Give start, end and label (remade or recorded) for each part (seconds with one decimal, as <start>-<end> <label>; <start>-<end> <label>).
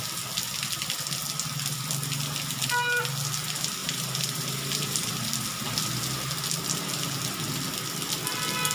0.0-3.8 recorded; 3.8-5.1 remade; 5.1-8.7 recorded